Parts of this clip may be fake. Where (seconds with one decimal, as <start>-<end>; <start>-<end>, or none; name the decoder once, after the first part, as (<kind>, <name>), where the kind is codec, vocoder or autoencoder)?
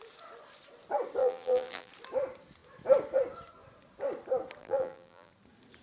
1.2-1.9 (vocoder, BigVGAN v2); 4.6-5.3